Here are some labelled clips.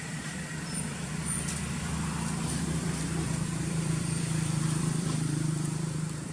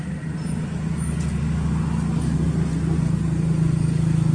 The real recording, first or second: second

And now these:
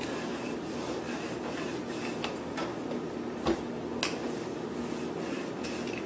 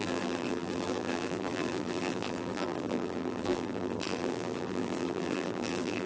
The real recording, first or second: first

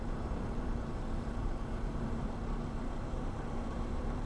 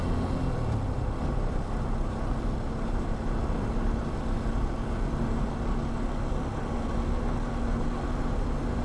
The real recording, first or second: second